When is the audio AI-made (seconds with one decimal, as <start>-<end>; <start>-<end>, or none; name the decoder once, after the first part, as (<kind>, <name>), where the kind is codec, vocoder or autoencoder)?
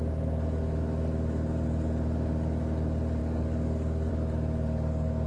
3.2-4.1 (codec, DAC)